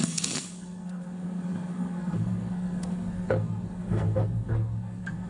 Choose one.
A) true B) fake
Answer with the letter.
B